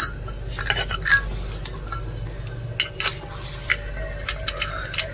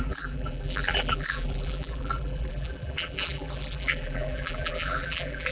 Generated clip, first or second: second